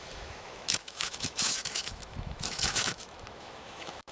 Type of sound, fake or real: fake